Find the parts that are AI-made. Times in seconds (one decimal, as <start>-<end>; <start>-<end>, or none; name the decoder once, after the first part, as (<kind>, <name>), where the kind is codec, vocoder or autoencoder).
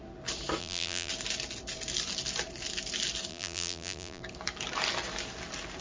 0.6-1.1 (vocoder, BigVGAN v2); 3.3-4.2